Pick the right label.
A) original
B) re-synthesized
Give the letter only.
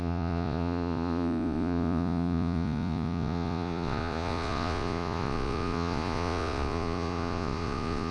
B